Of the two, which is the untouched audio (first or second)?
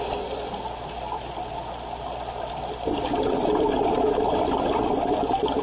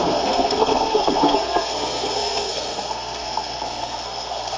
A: first